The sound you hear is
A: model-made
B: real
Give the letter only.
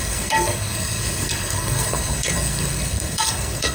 A